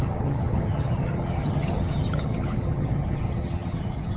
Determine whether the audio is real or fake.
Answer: fake